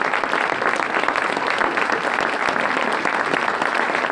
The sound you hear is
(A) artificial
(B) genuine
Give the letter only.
B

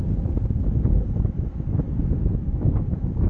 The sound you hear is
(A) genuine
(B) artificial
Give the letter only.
B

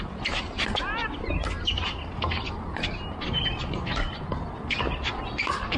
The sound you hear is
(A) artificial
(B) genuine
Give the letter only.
B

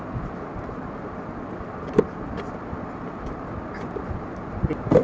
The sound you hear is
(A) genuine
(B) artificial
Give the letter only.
A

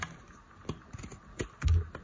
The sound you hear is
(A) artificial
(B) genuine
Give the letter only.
B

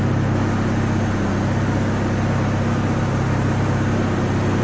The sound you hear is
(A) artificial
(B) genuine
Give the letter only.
B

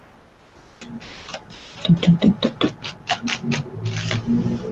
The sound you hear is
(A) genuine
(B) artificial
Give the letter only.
A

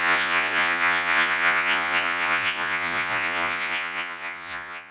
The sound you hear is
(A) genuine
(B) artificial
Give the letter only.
B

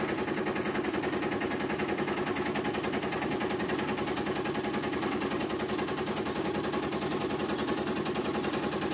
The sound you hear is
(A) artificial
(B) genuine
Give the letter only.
B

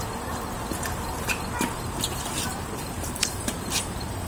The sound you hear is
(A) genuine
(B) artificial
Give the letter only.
B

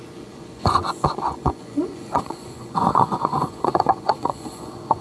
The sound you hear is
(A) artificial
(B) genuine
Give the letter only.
A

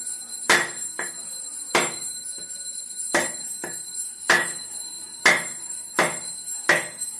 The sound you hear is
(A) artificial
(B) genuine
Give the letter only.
A